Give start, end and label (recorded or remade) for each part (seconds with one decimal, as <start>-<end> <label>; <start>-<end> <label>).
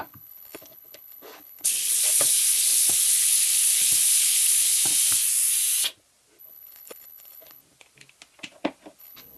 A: 0.0-4.8 remade; 4.8-6.4 recorded; 6.4-7.6 remade; 7.6-9.0 recorded; 9.0-9.4 remade